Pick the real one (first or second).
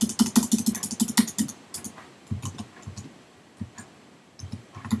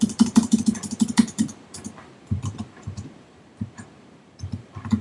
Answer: first